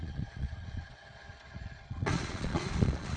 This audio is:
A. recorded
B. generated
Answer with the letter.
B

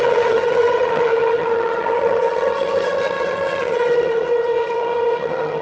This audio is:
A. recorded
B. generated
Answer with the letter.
B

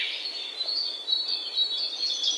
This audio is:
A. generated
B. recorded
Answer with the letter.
B